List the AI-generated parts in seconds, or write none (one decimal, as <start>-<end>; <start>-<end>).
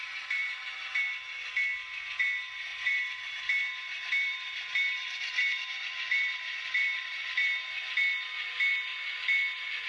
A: 0.4-1.0; 2.7-7.6